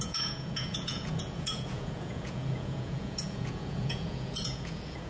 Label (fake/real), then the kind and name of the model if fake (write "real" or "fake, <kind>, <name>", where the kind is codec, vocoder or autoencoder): fake, vocoder, Vocos